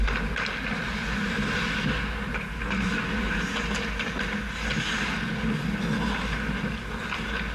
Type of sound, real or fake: real